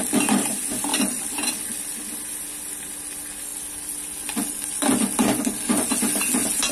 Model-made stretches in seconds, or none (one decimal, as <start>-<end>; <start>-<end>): none